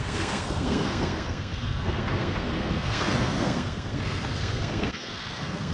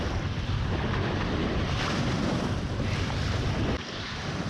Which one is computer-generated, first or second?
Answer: first